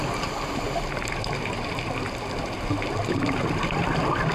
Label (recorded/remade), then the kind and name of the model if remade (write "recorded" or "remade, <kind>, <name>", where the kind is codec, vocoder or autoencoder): recorded